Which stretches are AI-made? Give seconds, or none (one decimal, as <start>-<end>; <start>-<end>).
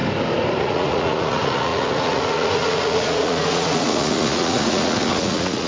0.6-5.7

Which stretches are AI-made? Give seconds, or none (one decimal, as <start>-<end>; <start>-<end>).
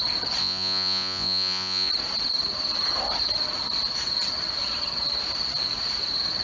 0.4-1.9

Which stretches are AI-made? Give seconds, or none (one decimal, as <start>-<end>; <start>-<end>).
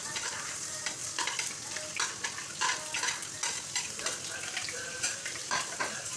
0.0-1.0; 4.7-6.2